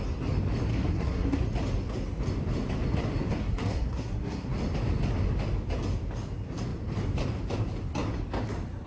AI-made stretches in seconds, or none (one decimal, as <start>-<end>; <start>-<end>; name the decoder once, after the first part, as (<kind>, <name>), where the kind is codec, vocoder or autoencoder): 0.7-1.4 (codec, SNAC); 3.3-4.5